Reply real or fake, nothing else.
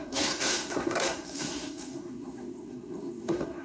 fake